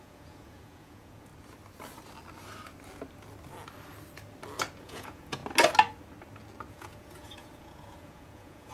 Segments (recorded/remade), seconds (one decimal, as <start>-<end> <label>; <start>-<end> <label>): 0.0-1.3 remade; 1.3-4.8 recorded; 4.8-5.4 remade; 5.4-6.7 recorded; 6.7-8.7 remade